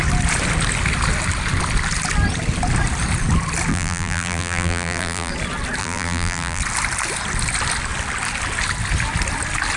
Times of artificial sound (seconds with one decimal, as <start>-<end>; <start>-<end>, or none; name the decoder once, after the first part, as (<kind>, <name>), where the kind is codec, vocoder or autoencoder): 3.7-5.3 (vocoder, BigVGAN v2); 5.8-6.6

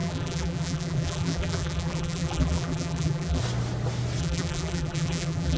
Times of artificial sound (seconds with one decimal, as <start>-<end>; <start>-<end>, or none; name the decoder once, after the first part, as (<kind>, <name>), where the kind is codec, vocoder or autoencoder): 0.0-3.4 (vocoder, BigVGAN v2); 4.2-5.6

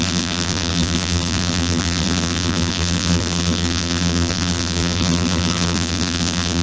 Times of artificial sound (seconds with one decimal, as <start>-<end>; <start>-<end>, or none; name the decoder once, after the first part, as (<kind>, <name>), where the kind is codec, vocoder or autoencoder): 0.0-6.6 (vocoder, BigVGAN v2)

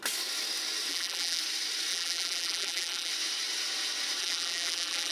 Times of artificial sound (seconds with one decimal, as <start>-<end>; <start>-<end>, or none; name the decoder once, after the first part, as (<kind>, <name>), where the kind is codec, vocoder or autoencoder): 0.9-1.4 (vocoder, BigVGAN v2); 1.9-3.1; 4.2-5.1

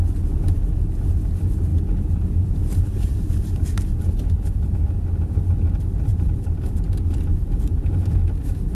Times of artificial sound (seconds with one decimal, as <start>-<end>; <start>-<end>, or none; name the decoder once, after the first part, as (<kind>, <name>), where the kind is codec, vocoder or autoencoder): 1.7-4.2 (vocoder, BigVGAN v2); 6.1-8.2

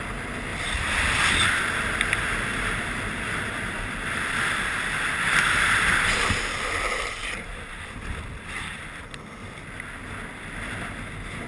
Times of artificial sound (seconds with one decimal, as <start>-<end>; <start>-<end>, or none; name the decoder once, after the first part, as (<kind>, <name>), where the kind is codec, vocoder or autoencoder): 0.5-1.6 (vocoder, BigVGAN v2); 2.5-7.7

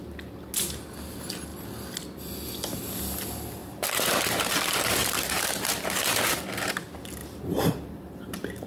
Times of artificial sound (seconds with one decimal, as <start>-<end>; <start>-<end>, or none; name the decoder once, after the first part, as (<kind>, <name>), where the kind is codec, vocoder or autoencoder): 3.6-6.2 (vocoder, BigVGAN v2); 7.2-8.7